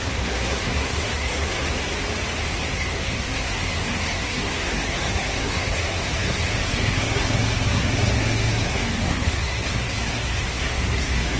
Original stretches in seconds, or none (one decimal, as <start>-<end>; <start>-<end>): 1.9-2.6